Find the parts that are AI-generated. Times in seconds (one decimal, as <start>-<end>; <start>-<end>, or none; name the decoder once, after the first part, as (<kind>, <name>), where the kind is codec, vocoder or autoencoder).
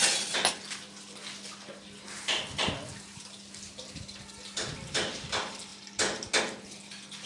none